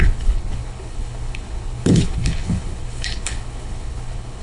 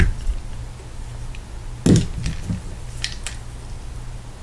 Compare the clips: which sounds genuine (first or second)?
second